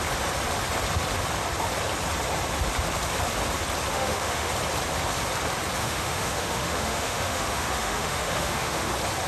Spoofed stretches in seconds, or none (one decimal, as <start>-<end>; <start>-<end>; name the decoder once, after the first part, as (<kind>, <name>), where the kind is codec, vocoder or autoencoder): 3.9-4.5 (autoencoder, DAC-VAE); 5.8-8.9